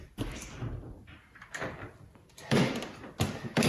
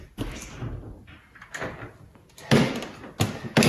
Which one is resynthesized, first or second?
first